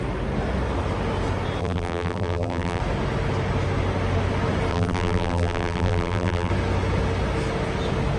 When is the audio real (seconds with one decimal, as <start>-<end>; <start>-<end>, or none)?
0.0-1.6; 2.8-4.7; 6.5-8.2